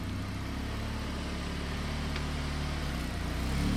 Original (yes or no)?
yes